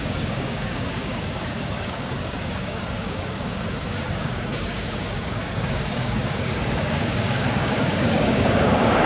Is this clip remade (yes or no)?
yes